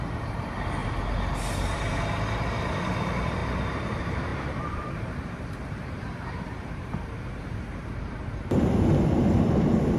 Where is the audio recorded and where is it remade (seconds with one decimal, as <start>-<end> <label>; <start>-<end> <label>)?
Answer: 0.0-0.8 remade; 0.8-1.6 recorded; 1.6-10.0 remade